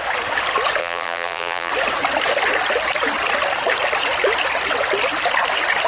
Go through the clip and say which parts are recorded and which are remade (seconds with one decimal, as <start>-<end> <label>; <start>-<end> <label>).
0.0-0.8 recorded; 0.8-1.7 remade; 1.7-5.9 recorded

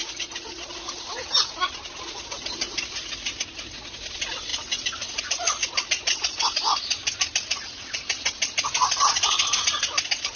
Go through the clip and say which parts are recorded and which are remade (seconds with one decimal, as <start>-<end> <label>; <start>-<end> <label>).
0.0-4.5 recorded; 4.5-5.3 remade; 5.3-10.3 recorded